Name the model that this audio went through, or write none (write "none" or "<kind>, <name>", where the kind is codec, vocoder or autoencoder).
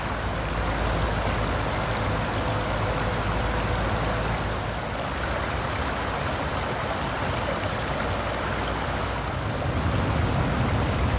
none